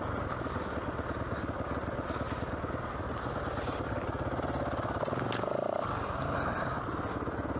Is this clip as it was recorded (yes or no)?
yes